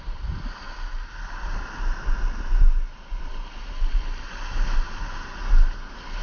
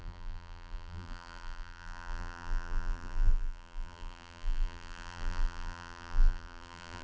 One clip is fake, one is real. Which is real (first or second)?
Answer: first